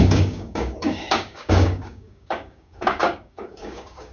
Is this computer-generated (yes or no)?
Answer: yes